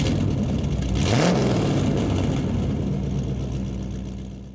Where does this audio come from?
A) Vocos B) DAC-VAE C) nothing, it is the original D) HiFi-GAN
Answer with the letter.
C